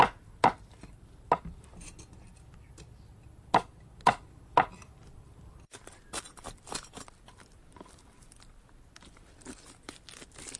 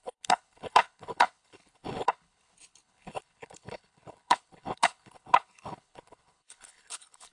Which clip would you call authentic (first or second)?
first